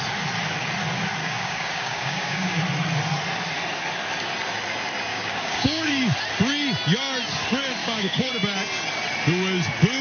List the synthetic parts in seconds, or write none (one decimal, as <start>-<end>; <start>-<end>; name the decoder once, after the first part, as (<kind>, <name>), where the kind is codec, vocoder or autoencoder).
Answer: 1.2-2.6 (codec, DAC); 5.1-5.9; 7.8-8.3